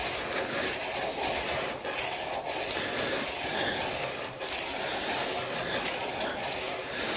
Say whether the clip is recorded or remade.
recorded